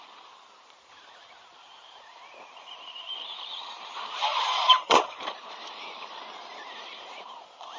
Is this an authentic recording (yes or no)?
no